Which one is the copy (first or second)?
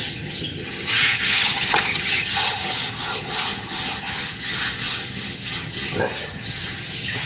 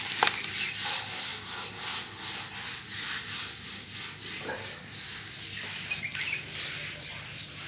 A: first